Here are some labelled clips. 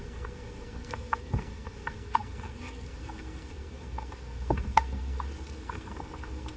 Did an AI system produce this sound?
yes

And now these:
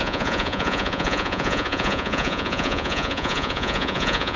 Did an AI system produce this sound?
yes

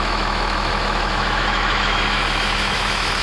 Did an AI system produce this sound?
yes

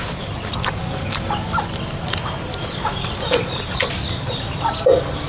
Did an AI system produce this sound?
no